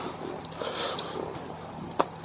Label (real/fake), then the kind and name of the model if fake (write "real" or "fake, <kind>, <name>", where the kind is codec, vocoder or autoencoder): real